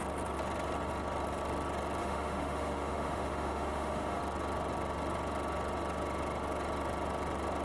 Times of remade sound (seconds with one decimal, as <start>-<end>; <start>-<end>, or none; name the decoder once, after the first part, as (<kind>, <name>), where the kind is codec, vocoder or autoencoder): 2.0-4.2 (autoencoder, DAC-VAE)